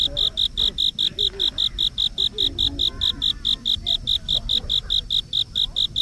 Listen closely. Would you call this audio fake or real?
real